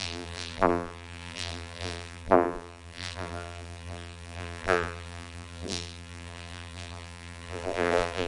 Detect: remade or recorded remade